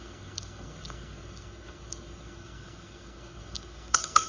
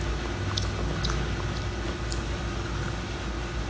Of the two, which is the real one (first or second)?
second